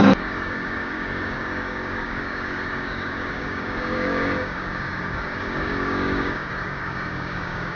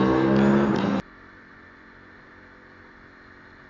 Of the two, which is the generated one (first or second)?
first